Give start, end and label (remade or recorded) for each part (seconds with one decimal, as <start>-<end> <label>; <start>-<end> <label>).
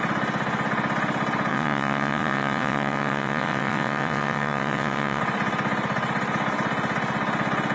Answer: 0.0-1.5 recorded; 1.5-5.2 remade; 5.2-7.7 recorded